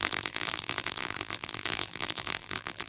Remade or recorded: remade